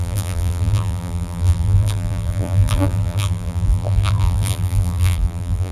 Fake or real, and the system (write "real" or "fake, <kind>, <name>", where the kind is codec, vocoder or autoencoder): fake, vocoder, BigVGAN v2